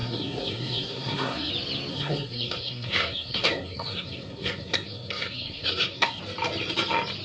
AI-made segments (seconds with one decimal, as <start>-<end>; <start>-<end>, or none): 0.0-1.5; 1.9-6.2